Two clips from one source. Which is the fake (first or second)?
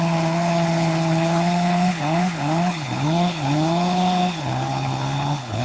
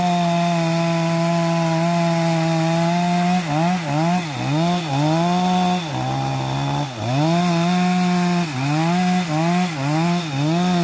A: first